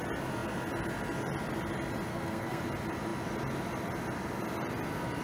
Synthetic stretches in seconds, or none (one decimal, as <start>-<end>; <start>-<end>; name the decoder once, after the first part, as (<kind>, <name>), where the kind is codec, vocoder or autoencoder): 2.1-2.6 (codec, SNAC)